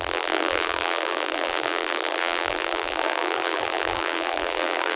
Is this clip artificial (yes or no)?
yes